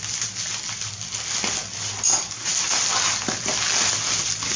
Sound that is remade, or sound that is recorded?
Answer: recorded